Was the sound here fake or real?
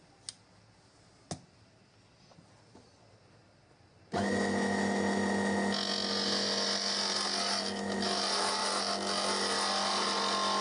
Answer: real